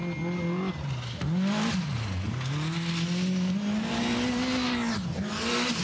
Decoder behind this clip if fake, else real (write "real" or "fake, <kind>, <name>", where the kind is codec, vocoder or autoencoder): real